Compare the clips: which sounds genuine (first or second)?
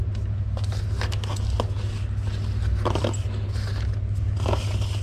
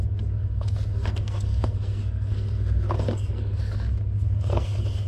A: first